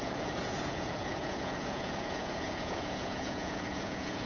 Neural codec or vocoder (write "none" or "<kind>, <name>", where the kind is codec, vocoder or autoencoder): vocoder, Vocos